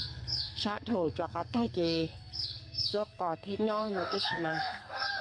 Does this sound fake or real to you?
fake